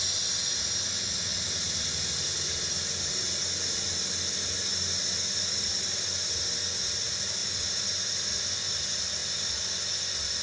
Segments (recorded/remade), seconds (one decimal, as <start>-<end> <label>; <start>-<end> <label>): 0.0-10.4 recorded